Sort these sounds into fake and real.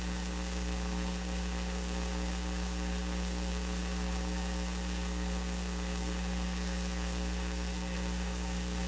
fake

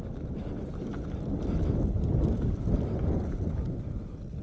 real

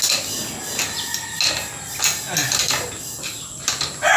real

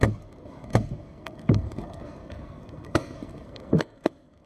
fake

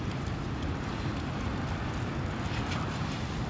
real